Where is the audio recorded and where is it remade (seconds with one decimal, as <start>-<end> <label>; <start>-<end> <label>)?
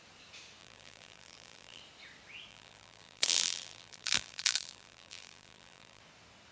0.0-0.6 recorded; 0.6-1.8 remade; 1.8-2.5 recorded; 2.5-6.0 remade; 6.0-6.5 recorded